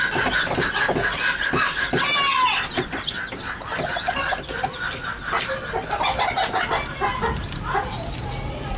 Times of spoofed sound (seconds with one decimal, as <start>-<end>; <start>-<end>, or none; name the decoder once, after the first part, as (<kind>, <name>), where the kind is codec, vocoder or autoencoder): none